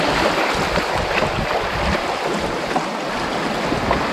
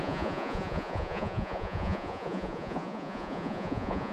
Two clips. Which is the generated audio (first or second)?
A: second